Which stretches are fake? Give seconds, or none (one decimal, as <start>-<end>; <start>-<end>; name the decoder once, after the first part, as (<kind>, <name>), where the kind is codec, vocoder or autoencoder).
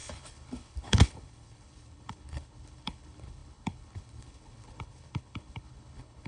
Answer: 0.0-6.3 (codec, HILCodec)